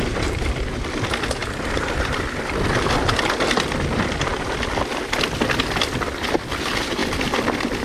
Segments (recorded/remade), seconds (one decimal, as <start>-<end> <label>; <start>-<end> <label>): 0.0-1.4 recorded; 1.4-2.4 remade; 2.4-7.8 recorded